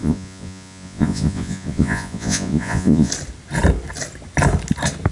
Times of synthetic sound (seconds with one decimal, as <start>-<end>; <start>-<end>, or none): 0.0-3.1